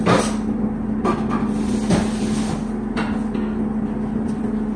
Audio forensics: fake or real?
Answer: real